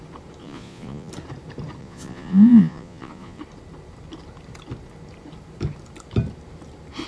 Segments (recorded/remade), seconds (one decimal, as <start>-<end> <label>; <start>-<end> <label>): 0.0-0.4 recorded; 0.4-1.1 remade; 1.1-1.8 recorded; 1.8-3.4 remade; 3.4-7.1 recorded